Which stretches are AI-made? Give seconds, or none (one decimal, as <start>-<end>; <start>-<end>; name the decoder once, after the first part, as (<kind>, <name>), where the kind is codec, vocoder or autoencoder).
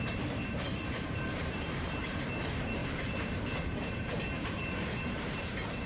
0.0-5.9 (vocoder, BigVGAN v2)